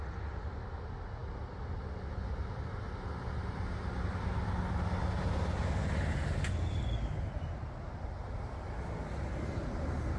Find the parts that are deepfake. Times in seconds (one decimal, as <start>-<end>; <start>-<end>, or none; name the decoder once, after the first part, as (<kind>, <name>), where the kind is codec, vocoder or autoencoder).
none